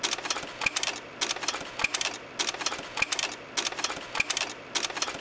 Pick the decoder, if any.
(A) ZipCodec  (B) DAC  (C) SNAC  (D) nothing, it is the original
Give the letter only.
D